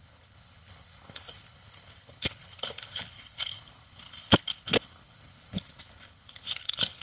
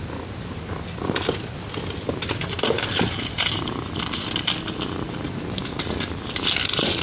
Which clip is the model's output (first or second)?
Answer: first